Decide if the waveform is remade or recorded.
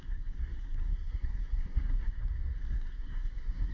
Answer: remade